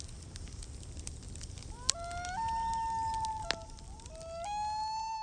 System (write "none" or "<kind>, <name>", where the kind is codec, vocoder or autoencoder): none